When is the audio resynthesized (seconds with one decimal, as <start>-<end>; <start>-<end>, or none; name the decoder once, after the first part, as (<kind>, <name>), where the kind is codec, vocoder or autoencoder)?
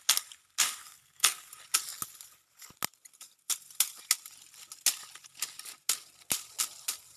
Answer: 0.8-1.5 (codec, SNAC)